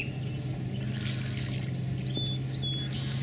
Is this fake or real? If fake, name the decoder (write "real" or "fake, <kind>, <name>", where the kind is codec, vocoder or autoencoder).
real